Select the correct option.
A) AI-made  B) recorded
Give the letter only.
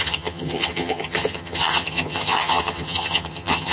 A